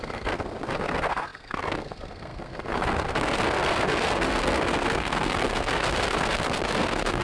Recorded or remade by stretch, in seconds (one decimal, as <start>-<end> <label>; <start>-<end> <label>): 0.0-7.2 remade